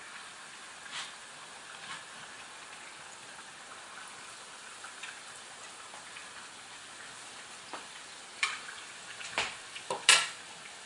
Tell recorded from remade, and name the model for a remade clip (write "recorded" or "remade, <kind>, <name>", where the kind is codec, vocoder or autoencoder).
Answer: recorded